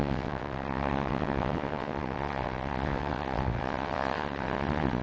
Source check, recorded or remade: remade